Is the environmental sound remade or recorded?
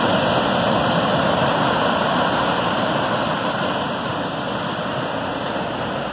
recorded